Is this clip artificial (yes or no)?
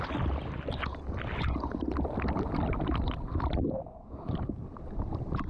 no